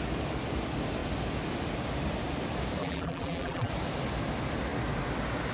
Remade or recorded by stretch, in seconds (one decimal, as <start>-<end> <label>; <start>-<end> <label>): 0.0-2.8 recorded; 2.8-3.7 remade; 3.7-5.5 recorded